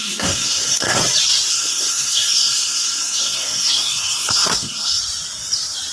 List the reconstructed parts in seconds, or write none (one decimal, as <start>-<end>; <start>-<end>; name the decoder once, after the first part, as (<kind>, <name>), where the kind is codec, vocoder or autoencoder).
0.0-1.0 (codec, SNAC); 1.5-5.0